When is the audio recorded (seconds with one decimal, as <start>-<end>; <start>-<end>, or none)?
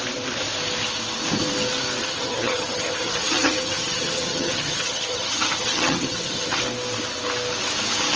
0.0-2.0; 6.6-8.2